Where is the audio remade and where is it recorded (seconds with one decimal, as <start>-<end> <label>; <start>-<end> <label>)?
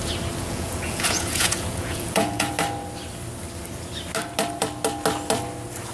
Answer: 0.0-0.4 recorded; 0.4-2.5 remade; 2.5-5.9 recorded